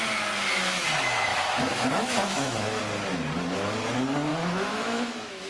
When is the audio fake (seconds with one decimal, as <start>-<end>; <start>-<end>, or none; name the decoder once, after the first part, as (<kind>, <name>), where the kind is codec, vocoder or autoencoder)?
1.3-2.8 (autoencoder, DAC-VAE); 4.3-5.5